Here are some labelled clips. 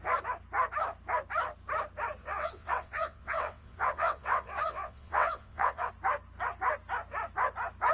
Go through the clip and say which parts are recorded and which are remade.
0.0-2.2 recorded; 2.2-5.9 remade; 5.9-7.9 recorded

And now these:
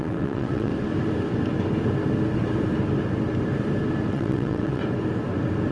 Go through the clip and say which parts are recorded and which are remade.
0.0-0.7 remade; 0.7-4.1 recorded; 4.1-4.8 remade; 4.8-5.7 recorded